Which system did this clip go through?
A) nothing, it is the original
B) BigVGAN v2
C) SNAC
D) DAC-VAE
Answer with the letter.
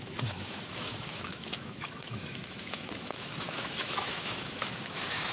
D